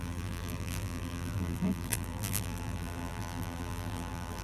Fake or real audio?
fake